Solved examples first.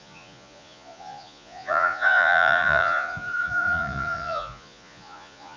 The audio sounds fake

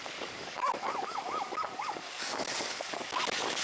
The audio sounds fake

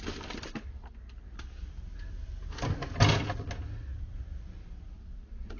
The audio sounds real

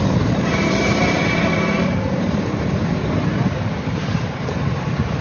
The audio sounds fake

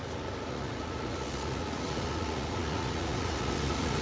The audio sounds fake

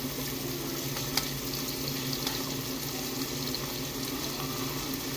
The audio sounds real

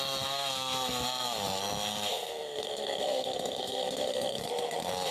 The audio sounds fake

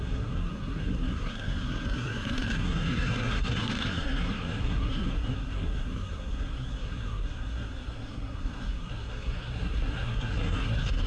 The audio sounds fake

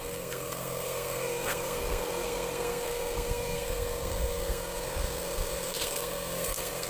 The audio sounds fake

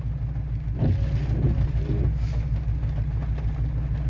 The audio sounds real